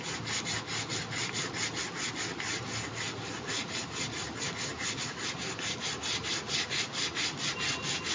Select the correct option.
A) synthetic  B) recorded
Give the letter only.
B